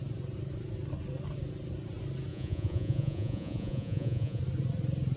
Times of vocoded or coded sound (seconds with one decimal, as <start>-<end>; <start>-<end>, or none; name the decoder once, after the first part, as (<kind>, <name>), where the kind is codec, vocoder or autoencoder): 2.3-4.4 (vocoder, Vocos)